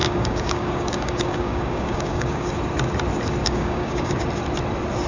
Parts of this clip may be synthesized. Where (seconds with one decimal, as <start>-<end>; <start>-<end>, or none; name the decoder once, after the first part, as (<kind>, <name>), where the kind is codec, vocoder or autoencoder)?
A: 0.0-2.5 (codec, DAC); 3.4-4.2